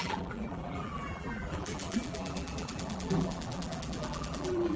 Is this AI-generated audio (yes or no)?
yes